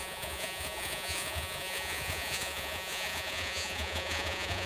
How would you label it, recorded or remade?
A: remade